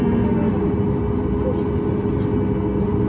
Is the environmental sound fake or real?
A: real